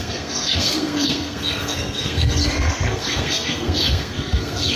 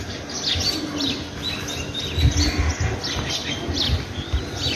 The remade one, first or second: first